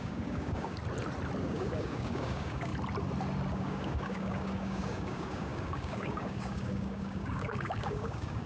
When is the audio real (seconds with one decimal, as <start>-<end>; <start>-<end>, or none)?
0.8-1.4; 2.7-3.5